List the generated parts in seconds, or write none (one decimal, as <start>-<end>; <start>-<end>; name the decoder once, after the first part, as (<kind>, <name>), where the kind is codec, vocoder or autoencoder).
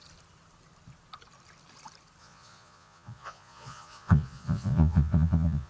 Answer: 2.2-5.7 (vocoder, Vocos)